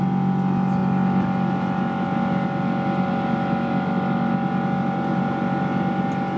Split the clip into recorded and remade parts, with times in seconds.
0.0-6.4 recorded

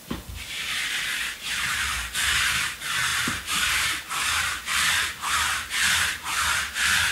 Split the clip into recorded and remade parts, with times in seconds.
0.0-3.1 recorded; 3.1-5.3 remade; 5.3-7.1 recorded

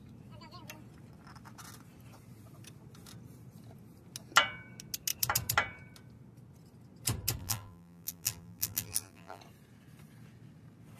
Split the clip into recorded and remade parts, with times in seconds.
0.0-7.4 recorded; 7.4-9.4 remade; 9.4-11.0 recorded

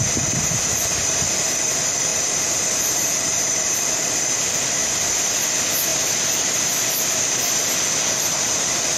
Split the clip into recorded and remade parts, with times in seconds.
0.0-2.1 recorded; 2.1-4.2 remade; 4.2-4.8 recorded; 4.8-5.4 remade; 5.4-9.0 recorded

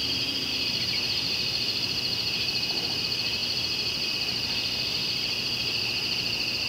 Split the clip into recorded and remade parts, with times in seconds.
0.0-3.0 remade; 3.0-6.7 recorded

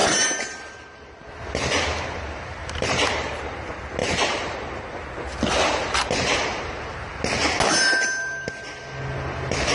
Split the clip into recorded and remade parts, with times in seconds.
0.0-1.2 remade; 1.2-2.6 recorded; 2.6-3.4 remade; 3.4-4.0 recorded; 4.0-4.8 remade; 4.8-9.7 recorded

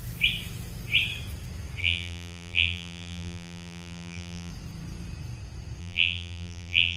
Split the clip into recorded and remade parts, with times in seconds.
0.0-1.8 recorded; 1.8-4.5 remade; 4.5-5.8 recorded; 5.8-7.0 remade

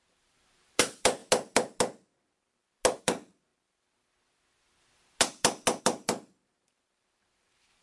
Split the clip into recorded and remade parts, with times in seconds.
0.0-1.2 remade; 1.2-3.0 recorded; 3.0-3.5 remade; 3.5-5.8 recorded; 5.8-7.8 remade